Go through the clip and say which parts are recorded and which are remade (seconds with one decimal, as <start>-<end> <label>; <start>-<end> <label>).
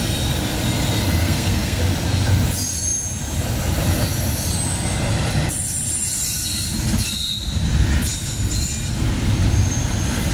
0.0-1.2 recorded; 1.2-1.8 remade; 1.8-10.3 recorded